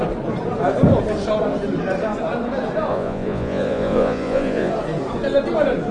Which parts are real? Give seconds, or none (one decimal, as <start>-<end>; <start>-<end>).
0.0-2.9; 4.7-5.9

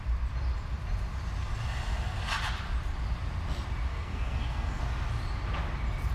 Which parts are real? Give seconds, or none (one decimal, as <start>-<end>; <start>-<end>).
0.0-3.9; 4.8-6.1

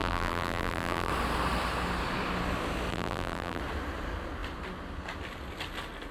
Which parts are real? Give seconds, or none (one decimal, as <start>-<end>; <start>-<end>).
1.1-2.9; 3.6-6.1

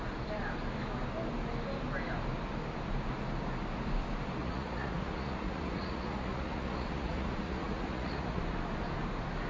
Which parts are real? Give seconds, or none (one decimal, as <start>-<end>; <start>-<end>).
0.0-4.4; 8.4-9.5

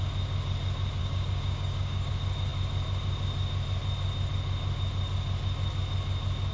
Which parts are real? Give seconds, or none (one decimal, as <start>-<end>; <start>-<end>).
0.0-1.0; 2.1-6.5

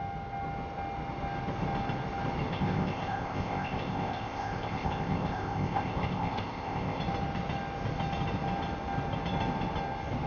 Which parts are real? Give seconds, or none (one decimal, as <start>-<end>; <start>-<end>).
0.0-2.5; 7.0-10.3